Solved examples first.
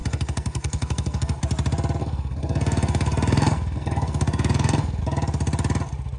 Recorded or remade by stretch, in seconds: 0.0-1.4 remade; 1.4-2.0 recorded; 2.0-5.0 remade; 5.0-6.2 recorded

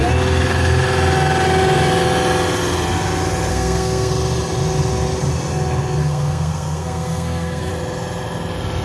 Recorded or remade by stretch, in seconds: 0.0-3.5 recorded; 3.5-4.1 remade; 4.1-6.0 recorded; 6.0-7.7 remade; 7.7-8.8 recorded

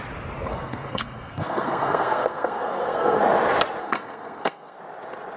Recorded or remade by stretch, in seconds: 0.0-0.5 recorded; 0.5-3.2 remade; 3.2-3.8 recorded; 3.8-4.8 remade; 4.8-5.4 recorded

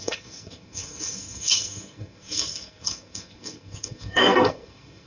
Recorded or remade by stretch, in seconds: 0.0-5.1 remade

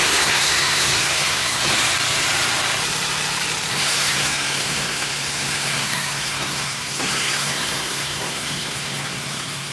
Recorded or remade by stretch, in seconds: 0.0-1.6 remade; 1.6-3.7 recorded; 3.7-9.7 remade